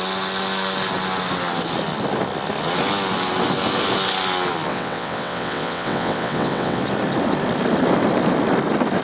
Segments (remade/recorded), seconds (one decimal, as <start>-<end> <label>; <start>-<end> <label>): 0.0-4.7 recorded; 4.7-6.8 remade; 6.8-9.0 recorded